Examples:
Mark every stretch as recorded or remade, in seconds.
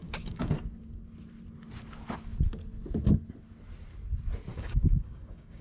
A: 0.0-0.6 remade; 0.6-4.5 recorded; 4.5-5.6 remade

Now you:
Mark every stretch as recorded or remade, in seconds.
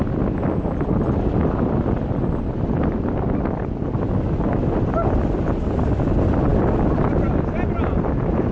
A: 0.0-8.5 recorded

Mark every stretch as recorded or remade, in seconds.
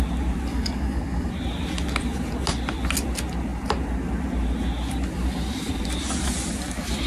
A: 0.0-0.5 recorded; 0.5-1.3 remade; 1.3-7.1 recorded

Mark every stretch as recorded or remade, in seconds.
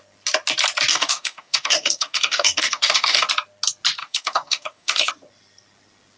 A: 0.0-0.9 recorded; 0.9-3.3 remade; 3.3-4.0 recorded; 4.0-5.1 remade; 5.1-6.2 recorded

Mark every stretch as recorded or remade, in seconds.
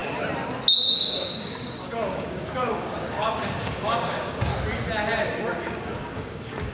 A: 0.0-0.7 recorded; 0.7-4.5 remade; 4.5-5.3 recorded; 5.3-6.7 remade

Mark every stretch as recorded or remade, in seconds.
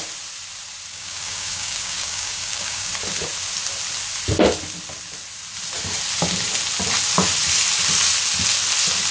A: 0.0-0.9 recorded; 0.9-2.9 remade; 2.9-9.1 recorded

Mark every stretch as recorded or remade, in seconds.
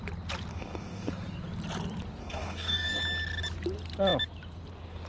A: 0.0-0.5 recorded; 0.5-1.1 remade; 1.1-2.2 recorded; 2.2-3.0 remade; 3.0-5.1 recorded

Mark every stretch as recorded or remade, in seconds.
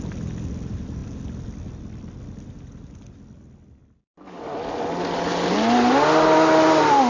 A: 0.0-7.1 recorded